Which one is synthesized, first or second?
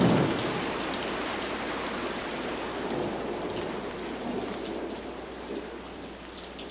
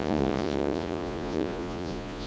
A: second